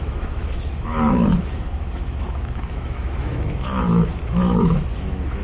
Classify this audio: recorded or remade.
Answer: remade